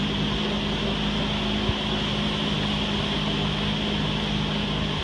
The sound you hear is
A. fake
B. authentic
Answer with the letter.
B